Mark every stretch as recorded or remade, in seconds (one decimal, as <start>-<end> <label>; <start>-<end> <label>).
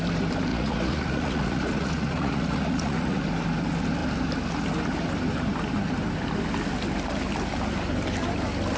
0.0-0.5 recorded; 0.5-3.2 remade; 3.2-8.8 recorded